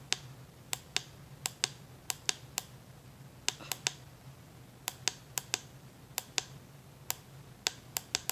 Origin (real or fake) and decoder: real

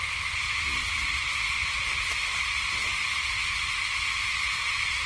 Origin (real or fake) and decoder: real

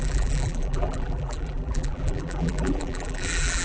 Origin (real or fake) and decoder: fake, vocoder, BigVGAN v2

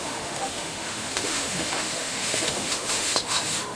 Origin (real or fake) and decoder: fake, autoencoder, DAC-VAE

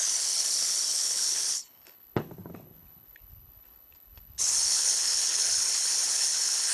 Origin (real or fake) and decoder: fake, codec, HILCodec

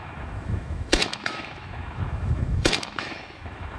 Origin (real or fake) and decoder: fake, autoencoder, DAC-VAE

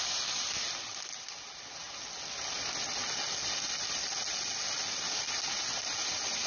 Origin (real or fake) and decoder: real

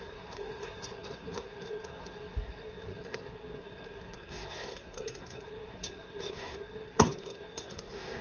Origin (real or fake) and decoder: fake, codec, SNAC